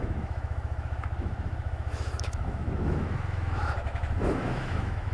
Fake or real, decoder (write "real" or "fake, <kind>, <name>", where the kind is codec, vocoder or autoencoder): fake, autoencoder, DAC-VAE